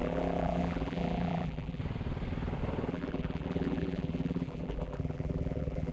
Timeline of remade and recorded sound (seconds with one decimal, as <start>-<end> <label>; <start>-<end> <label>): 0.0-1.8 remade; 1.8-2.9 recorded; 2.9-5.9 remade